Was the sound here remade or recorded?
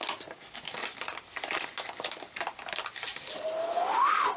recorded